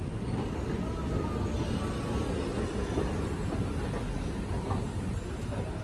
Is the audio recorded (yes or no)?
yes